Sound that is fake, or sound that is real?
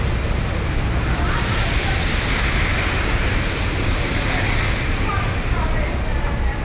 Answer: real